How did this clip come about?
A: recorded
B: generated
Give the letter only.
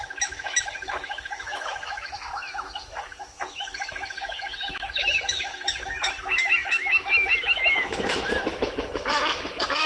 B